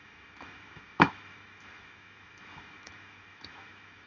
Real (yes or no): no